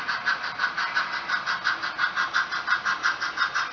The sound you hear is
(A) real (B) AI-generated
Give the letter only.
A